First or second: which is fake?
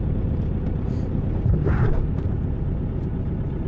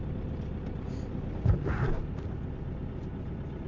first